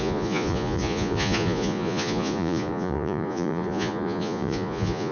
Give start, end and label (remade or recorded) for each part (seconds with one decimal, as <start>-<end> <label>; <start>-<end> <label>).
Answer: 0.0-5.1 remade